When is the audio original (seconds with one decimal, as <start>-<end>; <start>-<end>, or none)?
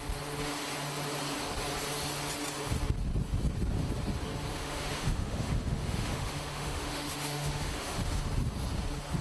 0.0-4.5; 8.2-9.2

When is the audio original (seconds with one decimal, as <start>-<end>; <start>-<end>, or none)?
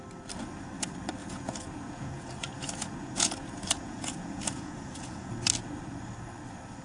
0.0-1.2; 5.3-6.8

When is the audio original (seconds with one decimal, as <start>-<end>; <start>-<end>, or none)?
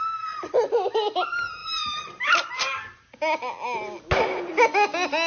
0.0-1.6; 2.5-5.3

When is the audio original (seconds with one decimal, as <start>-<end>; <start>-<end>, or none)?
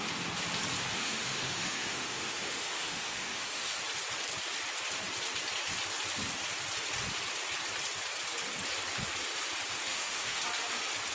0.0-0.9; 3.8-9.9; 10.4-11.1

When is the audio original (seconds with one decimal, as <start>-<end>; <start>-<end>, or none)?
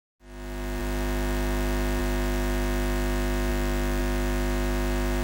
0.0-5.2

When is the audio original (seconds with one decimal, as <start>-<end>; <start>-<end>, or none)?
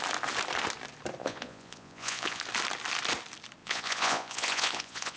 0.0-1.2; 2.4-3.6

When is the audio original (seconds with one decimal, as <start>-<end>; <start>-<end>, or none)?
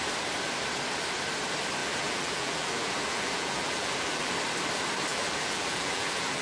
0.0-1.8; 4.3-5.1